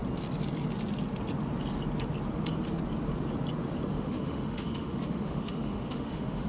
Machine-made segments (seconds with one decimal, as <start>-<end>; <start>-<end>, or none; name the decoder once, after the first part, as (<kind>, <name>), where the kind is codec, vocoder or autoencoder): 3.9-6.5 (autoencoder, DAC-VAE)